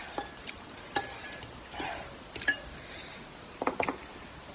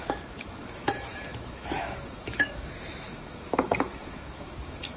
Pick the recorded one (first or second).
first